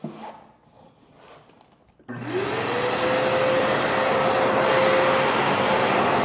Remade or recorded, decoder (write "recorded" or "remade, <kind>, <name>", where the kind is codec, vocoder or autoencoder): recorded